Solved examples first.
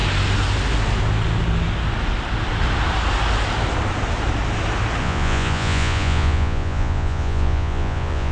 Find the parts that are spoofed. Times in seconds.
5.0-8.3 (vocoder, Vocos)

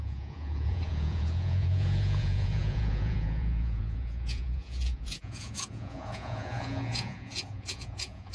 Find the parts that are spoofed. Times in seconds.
0.0-8.3 (vocoder, Vocos)

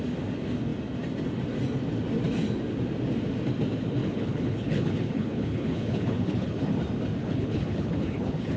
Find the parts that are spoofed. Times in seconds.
4.0-6.6 (codec, HILCodec); 7.2-8.6

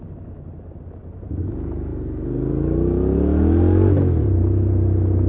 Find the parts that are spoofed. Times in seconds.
none

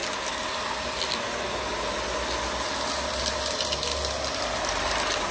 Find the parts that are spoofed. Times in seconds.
none

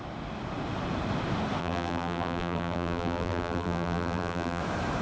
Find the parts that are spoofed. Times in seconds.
1.6-4.6 (vocoder, BigVGAN v2)